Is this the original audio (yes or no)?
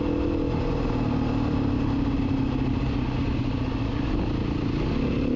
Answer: yes